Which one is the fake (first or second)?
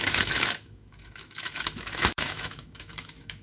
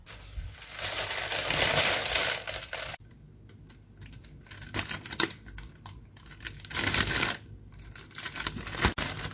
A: first